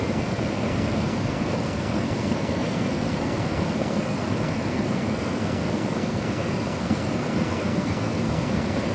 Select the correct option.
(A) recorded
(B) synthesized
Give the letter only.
B